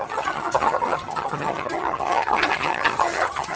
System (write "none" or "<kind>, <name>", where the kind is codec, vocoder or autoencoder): vocoder, HiFi-GAN